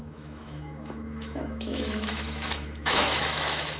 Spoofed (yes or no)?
yes